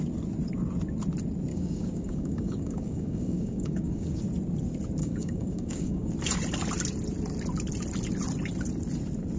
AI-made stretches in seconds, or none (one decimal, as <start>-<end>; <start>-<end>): 1.5-4.2; 5.0-6.1